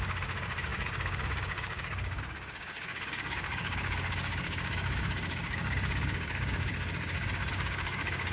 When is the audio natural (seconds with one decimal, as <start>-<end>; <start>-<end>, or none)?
6.7-7.5